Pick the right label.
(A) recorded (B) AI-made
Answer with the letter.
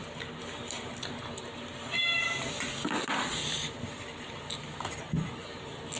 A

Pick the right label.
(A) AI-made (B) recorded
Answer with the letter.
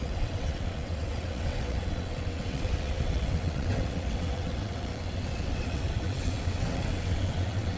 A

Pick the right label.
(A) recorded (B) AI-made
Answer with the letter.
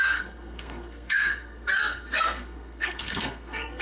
B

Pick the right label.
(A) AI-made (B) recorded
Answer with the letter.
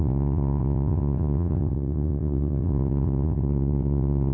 A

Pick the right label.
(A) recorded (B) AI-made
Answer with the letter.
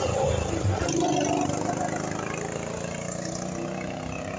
A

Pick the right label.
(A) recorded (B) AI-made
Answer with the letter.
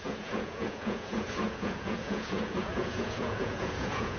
B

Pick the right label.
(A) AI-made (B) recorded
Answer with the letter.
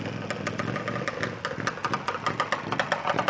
B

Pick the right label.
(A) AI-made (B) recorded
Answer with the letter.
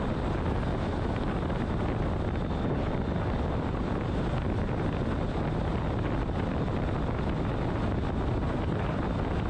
B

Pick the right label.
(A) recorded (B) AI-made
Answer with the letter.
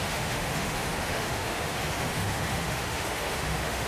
B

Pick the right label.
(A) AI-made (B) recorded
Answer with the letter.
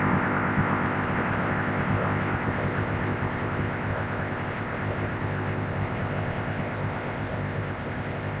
A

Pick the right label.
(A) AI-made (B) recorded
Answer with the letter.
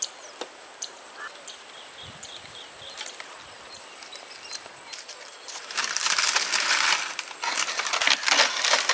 B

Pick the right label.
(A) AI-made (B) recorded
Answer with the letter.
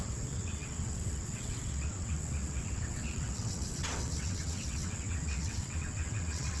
A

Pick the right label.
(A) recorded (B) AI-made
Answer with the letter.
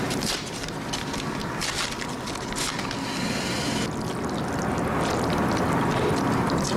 A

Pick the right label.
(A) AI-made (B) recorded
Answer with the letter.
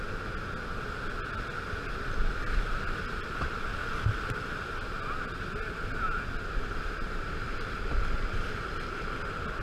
B